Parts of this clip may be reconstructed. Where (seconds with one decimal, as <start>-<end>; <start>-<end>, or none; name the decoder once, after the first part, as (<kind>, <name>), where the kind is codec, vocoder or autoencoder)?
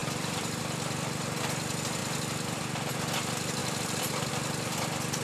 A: 0.0-0.6 (vocoder, BigVGAN v2); 2.0-2.9; 3.6-4.3